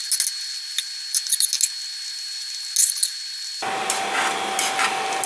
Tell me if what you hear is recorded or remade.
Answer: recorded